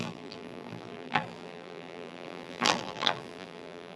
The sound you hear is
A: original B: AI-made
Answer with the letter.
B